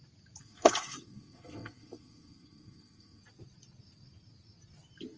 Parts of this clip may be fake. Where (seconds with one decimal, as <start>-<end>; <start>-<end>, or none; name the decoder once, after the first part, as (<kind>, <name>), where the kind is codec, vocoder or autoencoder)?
0.4-3.2 (codec, SNAC)